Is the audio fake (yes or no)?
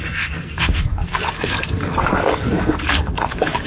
yes